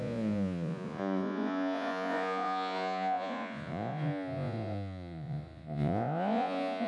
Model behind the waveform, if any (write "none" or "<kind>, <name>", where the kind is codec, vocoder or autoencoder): vocoder, Vocos